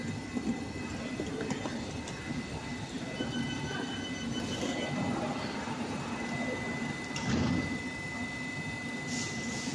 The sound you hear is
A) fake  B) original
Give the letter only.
B